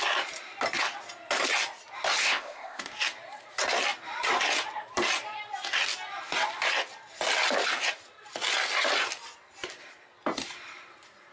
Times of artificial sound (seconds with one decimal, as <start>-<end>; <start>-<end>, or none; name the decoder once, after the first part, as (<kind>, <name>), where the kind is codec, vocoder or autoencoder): 2.2-2.8 (codec, ZipCodec)